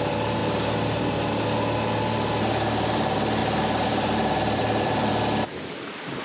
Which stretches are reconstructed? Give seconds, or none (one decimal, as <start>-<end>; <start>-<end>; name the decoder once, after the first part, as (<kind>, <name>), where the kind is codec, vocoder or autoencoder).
3.4-5.1 (vocoder, BigVGAN v2)